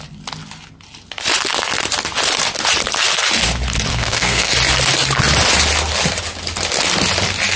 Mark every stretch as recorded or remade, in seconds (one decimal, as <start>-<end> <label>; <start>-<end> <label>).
0.0-3.9 recorded; 3.9-4.5 remade; 4.5-7.6 recorded